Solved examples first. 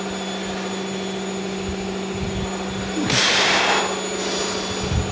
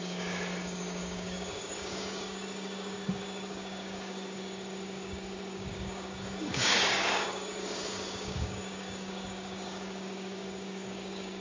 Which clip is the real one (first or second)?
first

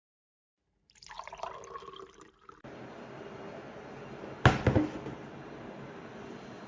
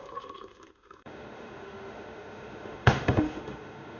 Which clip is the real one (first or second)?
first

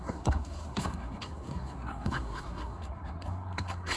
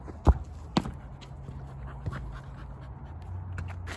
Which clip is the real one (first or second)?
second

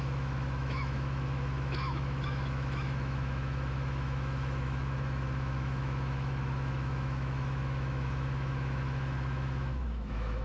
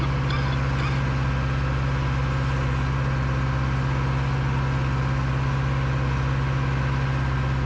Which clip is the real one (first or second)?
second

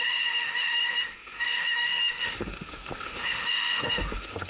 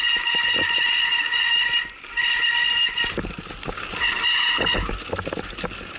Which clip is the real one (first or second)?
second